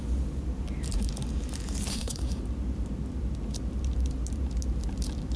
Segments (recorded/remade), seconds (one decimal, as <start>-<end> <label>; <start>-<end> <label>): 0.0-1.9 recorded; 1.9-2.4 remade; 2.4-5.4 recorded